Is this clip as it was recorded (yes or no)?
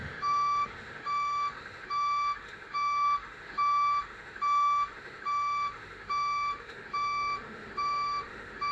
no